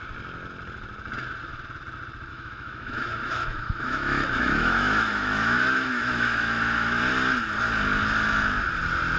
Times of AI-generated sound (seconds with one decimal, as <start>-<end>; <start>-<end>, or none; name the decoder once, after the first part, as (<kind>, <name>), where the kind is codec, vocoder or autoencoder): 2.3-7.0 (autoencoder, DAC-VAE)